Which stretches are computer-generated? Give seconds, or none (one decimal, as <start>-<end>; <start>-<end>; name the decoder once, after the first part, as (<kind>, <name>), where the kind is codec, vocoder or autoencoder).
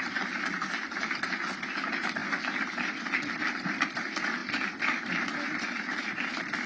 4.4-5.3 (vocoder, BigVGAN v2)